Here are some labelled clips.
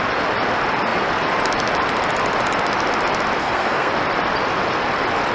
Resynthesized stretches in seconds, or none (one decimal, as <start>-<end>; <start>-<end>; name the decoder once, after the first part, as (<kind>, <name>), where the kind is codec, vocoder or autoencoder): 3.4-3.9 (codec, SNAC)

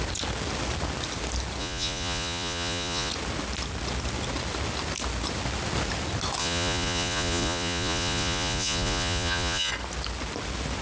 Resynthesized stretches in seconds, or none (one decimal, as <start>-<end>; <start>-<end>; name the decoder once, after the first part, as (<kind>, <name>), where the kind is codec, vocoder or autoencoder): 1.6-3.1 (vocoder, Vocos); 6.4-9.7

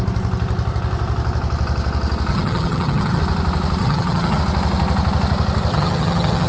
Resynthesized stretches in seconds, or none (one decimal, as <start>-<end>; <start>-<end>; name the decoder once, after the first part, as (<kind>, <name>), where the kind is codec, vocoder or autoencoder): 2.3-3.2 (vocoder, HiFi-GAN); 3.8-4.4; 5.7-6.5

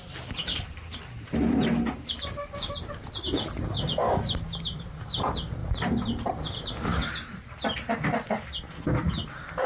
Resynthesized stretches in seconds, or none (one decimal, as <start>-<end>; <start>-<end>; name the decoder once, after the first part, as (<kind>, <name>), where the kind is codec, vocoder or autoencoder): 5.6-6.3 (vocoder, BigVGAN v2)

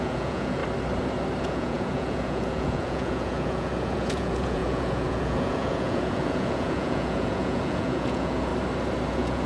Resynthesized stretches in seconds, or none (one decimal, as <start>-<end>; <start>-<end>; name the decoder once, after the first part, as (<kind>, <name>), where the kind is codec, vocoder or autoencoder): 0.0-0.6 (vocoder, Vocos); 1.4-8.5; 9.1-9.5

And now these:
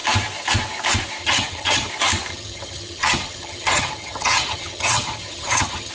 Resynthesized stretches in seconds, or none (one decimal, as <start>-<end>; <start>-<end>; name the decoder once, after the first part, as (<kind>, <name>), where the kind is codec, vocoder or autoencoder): 1.2-1.9 (vocoder, HiFi-GAN); 2.3-5.9

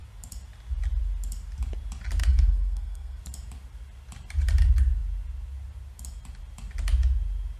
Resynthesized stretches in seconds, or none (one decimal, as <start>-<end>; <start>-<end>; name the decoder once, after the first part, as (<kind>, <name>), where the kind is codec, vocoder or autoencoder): 2.2-3.2 (codec, SNAC)

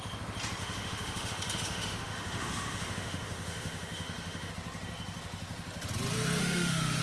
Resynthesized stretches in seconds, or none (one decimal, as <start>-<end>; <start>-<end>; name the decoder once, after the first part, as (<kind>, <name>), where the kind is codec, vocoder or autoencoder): 0.6-4.5 (autoencoder, DAC-VAE); 6.4-7.0